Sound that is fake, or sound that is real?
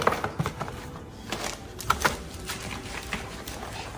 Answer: real